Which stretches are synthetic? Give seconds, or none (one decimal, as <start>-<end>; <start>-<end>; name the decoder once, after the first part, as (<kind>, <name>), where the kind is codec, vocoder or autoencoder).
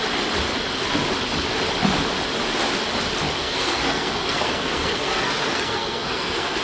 3.4-6.6 (codec, SNAC)